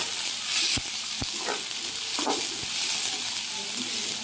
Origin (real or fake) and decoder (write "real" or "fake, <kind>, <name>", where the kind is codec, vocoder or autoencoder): real